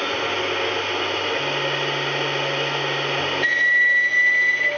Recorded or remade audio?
recorded